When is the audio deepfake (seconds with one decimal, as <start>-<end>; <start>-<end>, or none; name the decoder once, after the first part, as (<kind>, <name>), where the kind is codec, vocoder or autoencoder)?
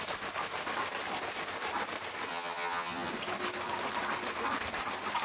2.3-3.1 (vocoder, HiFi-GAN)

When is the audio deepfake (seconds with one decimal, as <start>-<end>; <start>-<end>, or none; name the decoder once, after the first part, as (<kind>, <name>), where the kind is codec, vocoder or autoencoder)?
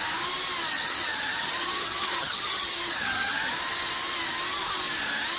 0.7-3.5 (vocoder, HiFi-GAN)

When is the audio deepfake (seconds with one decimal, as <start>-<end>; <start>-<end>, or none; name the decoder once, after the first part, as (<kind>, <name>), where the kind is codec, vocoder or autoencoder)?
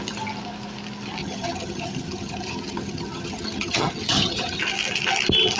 1.2-4.6 (vocoder, HiFi-GAN)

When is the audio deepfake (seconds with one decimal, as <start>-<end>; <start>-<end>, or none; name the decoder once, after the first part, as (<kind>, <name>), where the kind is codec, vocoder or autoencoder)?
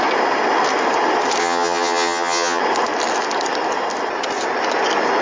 1.4-2.6 (vocoder, HiFi-GAN)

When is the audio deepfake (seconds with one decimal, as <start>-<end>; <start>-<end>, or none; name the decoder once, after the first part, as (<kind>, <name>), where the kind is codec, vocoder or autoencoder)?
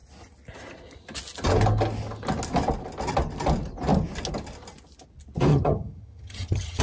5.5-6.8 (vocoder, HiFi-GAN)